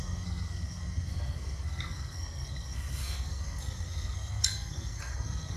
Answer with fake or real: fake